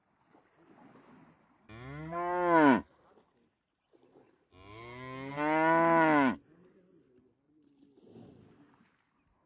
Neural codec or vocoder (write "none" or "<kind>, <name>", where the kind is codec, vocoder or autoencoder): none